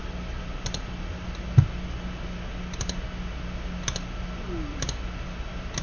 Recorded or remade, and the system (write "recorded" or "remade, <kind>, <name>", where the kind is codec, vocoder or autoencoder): recorded